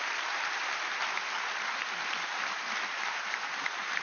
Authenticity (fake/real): real